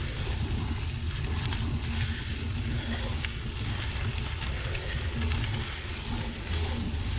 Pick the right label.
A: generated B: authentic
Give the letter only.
B